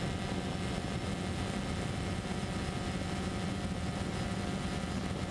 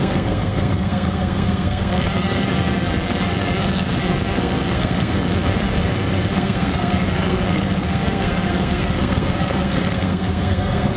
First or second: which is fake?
second